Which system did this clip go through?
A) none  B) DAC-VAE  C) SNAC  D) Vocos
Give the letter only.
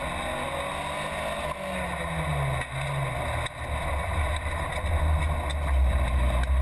A